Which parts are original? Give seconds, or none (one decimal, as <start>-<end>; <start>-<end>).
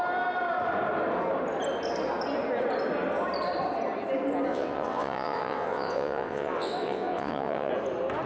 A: 0.0-4.5; 7.7-8.3